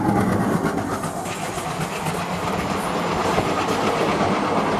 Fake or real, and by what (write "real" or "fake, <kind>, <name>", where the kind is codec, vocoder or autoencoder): real